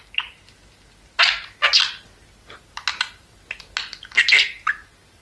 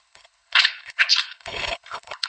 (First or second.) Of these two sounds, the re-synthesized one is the second